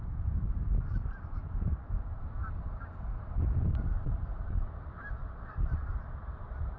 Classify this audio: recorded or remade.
remade